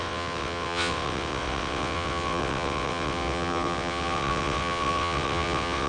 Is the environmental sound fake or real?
fake